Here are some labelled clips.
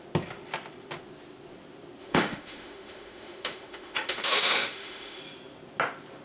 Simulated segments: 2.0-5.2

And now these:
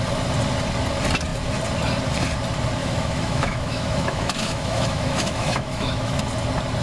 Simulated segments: 2.8-6.2

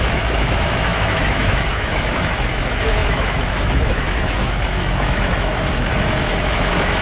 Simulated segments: 0.0-7.0

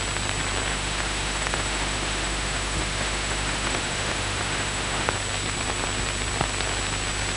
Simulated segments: 0.7-5.1

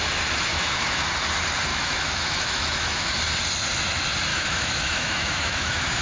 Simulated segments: 0.5-1.1; 1.7-3.2; 4.3-6.0

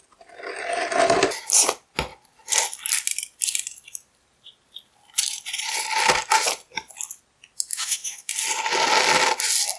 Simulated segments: 7.7-8.3

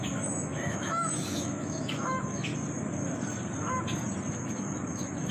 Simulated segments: 0.0-2.5; 4.3-5.3